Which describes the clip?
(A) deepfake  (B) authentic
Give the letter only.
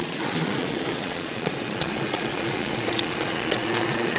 A